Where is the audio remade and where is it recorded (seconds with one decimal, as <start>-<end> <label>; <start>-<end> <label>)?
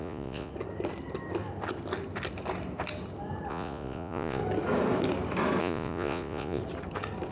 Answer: 0.0-0.5 remade; 0.5-3.5 recorded; 3.5-4.4 remade; 4.4-5.6 recorded; 5.6-6.6 remade; 6.6-7.3 recorded